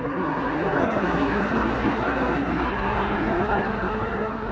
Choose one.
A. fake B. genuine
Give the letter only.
A